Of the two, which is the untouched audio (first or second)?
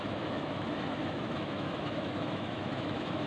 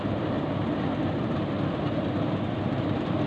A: second